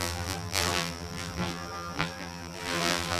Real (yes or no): no